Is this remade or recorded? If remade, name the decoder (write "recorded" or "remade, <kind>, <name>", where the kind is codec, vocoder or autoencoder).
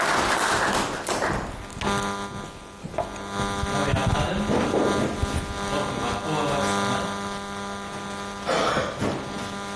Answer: recorded